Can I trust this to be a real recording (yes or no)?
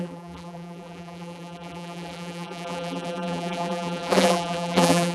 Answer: no